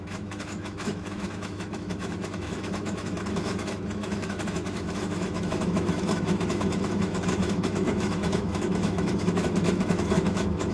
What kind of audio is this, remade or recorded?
remade